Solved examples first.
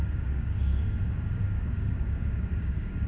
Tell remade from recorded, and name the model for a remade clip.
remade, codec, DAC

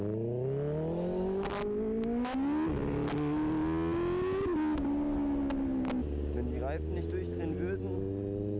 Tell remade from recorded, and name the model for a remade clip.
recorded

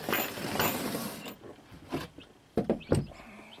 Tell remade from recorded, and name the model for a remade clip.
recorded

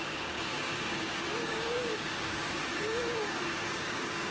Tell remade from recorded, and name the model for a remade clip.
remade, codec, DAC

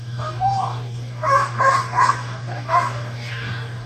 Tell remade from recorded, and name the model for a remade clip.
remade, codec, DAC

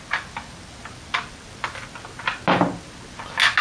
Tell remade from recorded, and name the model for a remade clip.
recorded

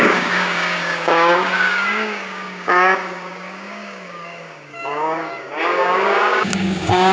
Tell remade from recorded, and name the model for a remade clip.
remade, codec, DAC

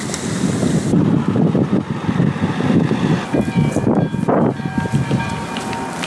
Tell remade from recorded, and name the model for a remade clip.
recorded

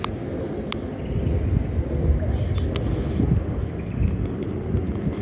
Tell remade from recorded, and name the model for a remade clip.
recorded